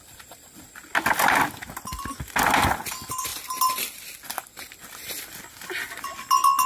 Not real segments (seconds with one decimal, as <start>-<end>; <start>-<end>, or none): none